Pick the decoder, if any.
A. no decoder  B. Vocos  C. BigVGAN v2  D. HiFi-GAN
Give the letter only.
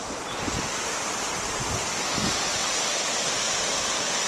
A